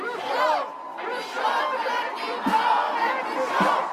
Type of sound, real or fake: real